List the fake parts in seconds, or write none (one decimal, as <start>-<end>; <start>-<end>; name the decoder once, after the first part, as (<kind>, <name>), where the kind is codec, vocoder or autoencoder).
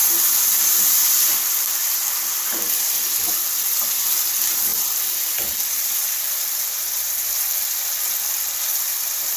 0.7-4.7 (vocoder, BigVGAN v2); 5.6-7.5; 8.7-9.4